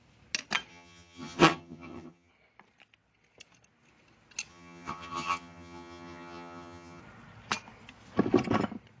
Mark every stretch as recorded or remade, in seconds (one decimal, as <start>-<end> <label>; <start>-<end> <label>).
0.0-0.7 recorded; 0.7-2.3 remade; 2.3-4.5 recorded; 4.5-7.0 remade; 7.0-9.0 recorded